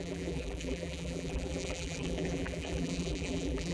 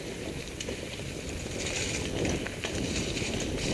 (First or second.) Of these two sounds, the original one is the second